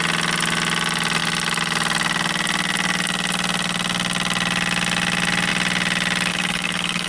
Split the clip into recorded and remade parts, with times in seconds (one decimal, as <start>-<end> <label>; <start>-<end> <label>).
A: 0.0-6.3 recorded; 6.3-7.1 remade